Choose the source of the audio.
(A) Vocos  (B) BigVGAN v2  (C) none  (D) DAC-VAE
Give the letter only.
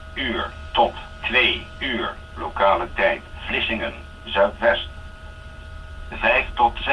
C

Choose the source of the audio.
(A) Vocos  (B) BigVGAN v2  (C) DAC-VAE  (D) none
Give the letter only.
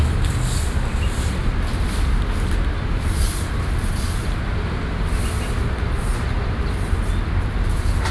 D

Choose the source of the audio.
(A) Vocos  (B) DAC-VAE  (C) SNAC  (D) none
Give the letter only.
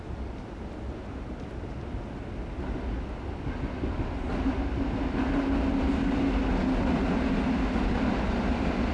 D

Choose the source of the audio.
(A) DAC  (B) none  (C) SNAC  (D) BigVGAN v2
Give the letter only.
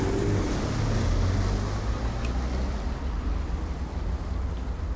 B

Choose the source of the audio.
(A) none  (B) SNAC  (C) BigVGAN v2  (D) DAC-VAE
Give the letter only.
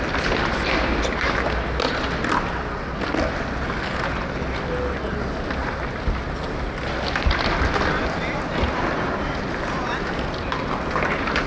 A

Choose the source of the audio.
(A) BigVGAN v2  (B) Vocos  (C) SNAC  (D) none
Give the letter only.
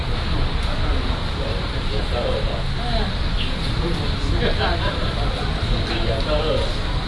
D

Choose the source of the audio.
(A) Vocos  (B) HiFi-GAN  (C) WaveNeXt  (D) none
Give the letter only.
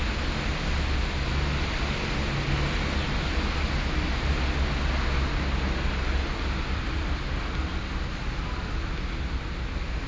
D